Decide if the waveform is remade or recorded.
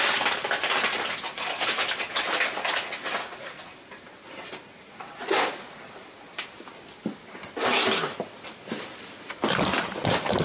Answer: recorded